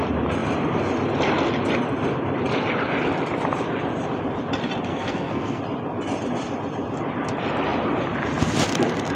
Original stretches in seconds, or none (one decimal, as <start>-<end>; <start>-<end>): 0.0-4.9; 5.6-9.2